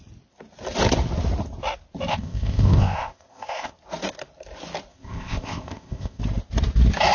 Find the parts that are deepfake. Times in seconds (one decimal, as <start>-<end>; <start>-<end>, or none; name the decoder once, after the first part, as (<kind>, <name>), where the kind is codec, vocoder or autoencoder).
2.1-3.7 (codec, ZipCodec); 4.9-6.2